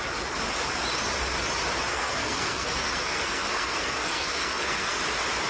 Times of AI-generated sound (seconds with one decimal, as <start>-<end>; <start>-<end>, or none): 1.9-5.0